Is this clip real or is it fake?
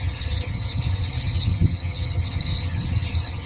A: fake